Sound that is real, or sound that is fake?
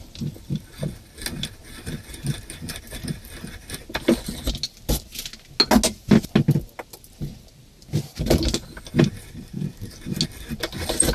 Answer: real